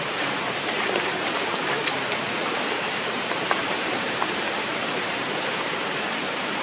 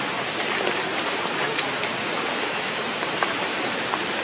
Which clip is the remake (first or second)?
first